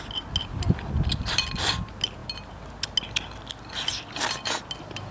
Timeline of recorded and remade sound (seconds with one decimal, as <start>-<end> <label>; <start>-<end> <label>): 0.0-5.1 recorded